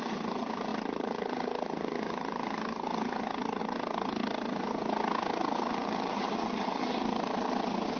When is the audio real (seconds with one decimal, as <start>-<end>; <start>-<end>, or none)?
0.0-8.0